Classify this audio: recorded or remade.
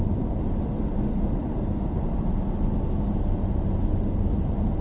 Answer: recorded